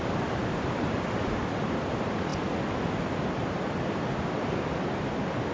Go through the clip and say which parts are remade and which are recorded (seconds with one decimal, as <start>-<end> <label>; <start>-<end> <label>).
0.0-0.4 recorded; 0.4-1.4 remade; 1.4-5.5 recorded